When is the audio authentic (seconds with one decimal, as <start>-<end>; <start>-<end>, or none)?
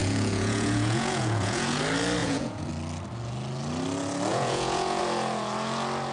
1.8-2.2; 2.7-4.3; 5.0-6.1